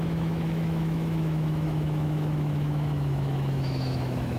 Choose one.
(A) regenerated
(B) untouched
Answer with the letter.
A